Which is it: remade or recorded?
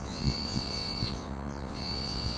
remade